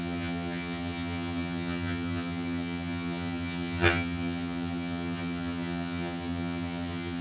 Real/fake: fake